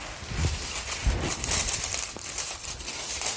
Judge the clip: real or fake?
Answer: real